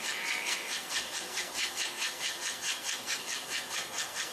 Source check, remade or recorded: remade